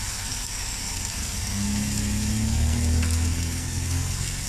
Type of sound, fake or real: fake